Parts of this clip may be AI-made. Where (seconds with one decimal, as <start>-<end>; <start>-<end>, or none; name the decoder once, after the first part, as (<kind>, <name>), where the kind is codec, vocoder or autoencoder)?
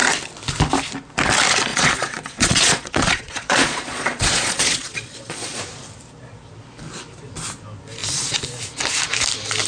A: 1.7-5.6 (vocoder, Vocos)